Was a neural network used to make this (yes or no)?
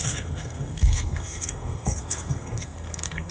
yes